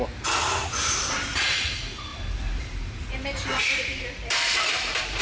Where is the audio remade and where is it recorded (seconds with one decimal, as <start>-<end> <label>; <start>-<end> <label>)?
0.0-0.6 recorded; 0.6-1.4 remade; 1.4-2.1 recorded; 2.1-5.2 remade